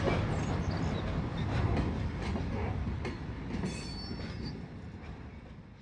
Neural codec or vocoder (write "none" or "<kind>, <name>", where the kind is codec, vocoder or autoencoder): none